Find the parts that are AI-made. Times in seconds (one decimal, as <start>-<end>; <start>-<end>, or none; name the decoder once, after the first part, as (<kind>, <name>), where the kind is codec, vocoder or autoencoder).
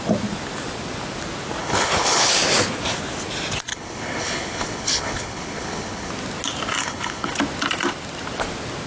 1.6-2.3 (codec, HILCodec); 3.7-6.1; 6.8-7.3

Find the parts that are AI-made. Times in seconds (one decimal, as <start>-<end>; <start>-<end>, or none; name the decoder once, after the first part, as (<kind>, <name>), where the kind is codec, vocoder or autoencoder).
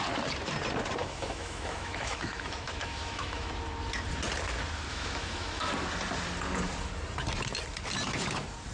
1.0-3.5 (autoencoder, DAC-VAE); 4.9-5.7